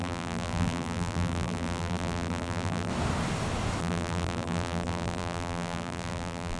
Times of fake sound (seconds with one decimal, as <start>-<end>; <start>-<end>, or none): 0.0-2.9; 3.8-6.6

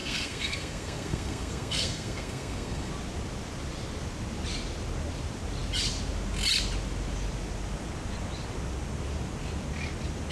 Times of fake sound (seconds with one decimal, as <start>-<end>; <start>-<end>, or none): 0.0-2.9

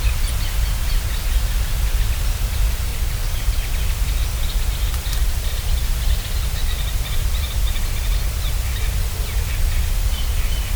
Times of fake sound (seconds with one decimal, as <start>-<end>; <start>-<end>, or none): 2.9-3.7

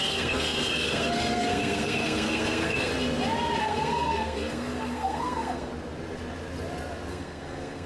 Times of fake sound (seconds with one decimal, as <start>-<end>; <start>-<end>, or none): 0.0-2.9; 3.6-5.7; 7.1-7.9